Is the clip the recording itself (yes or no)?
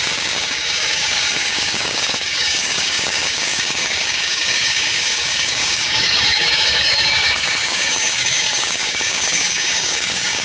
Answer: no